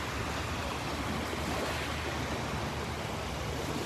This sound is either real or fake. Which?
real